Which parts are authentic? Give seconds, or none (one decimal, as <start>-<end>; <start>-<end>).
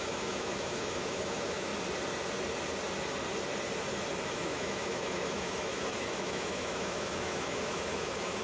1.7-4.3